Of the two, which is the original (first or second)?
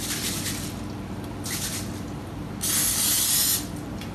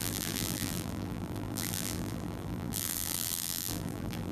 first